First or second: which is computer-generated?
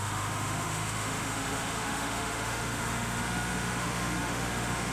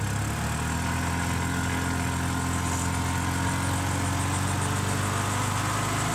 first